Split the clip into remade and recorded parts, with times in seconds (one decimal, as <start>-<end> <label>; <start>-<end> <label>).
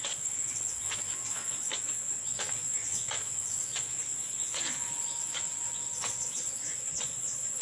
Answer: 0.0-7.6 remade